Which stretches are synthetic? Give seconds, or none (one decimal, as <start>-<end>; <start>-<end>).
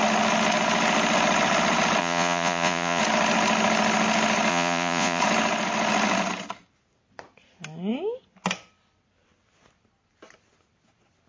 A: 2.0-3.0; 4.5-5.2